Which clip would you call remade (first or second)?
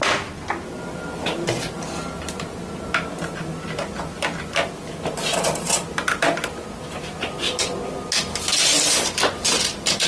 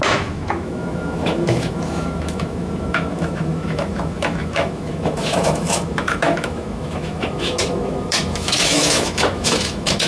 second